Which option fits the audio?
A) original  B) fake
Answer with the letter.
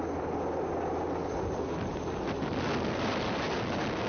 A